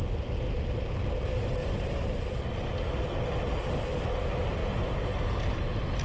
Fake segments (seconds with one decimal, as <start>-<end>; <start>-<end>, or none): 1.6-2.4; 4.6-5.6